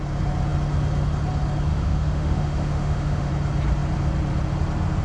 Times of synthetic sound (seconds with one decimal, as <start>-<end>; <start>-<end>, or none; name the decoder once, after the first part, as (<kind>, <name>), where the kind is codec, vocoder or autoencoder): 1.7-3.3 (autoencoder, DAC-VAE)